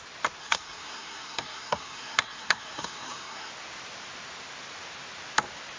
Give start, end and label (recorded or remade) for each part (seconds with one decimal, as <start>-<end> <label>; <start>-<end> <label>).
0.0-0.4 recorded; 0.4-3.5 remade; 3.5-5.8 recorded